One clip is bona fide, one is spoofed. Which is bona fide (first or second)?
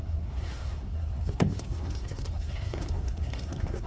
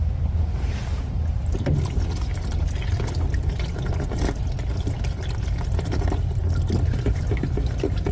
second